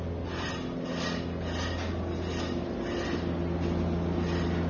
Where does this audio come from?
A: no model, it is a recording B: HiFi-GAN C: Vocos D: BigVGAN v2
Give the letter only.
A